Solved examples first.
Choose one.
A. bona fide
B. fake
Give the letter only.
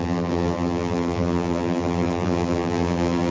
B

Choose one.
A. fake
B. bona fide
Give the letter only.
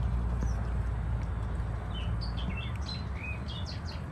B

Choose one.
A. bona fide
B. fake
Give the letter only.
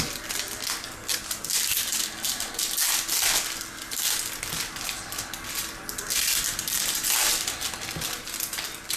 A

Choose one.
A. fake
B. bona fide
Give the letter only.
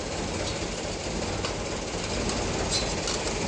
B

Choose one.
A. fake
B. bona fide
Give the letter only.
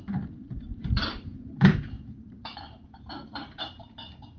A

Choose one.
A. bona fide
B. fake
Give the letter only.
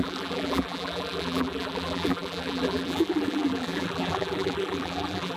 B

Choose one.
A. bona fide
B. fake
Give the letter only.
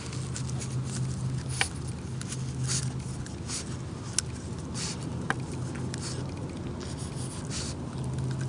A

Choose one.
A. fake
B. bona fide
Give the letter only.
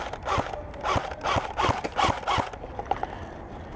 B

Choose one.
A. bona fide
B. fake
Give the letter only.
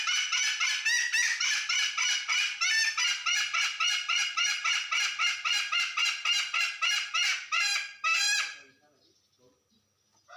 A